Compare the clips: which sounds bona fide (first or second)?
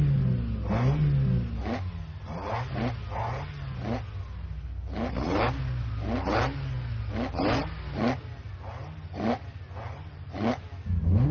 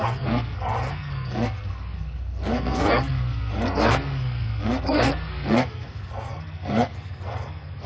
first